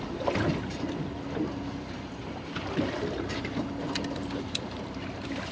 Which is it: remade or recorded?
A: remade